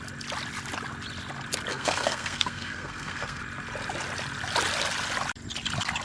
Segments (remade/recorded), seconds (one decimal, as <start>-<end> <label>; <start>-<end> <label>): 0.0-1.7 recorded; 1.7-3.4 remade; 3.4-6.0 recorded